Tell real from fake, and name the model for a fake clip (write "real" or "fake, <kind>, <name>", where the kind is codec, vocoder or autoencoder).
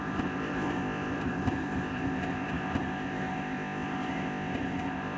fake, codec, ZipCodec